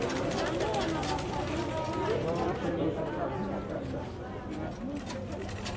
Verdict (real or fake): real